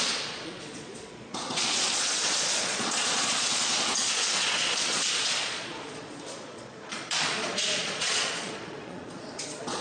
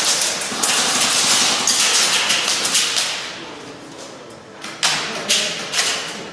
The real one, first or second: second